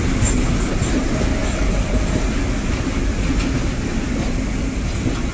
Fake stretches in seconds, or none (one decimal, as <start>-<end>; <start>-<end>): none